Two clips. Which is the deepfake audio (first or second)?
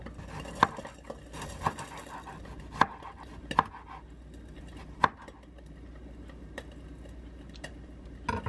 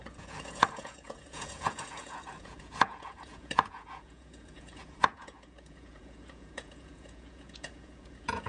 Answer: second